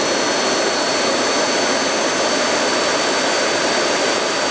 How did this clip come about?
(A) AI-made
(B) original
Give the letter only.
B